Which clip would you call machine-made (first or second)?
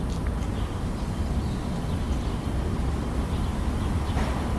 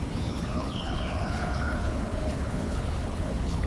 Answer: second